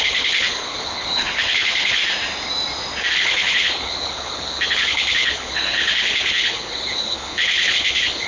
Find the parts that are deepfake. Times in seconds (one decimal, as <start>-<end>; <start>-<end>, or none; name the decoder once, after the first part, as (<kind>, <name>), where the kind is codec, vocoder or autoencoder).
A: 0.0-2.0 (codec, HILCodec); 3.1-8.3